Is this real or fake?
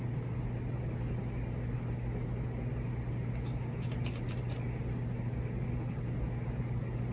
real